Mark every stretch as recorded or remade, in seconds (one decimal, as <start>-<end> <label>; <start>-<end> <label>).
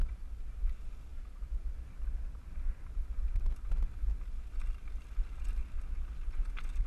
0.0-6.9 recorded